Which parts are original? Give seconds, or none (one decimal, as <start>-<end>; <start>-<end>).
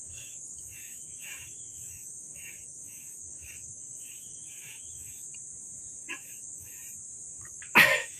5.3-6.0; 6.8-7.4